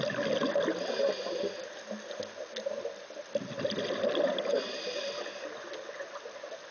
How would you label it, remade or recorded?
recorded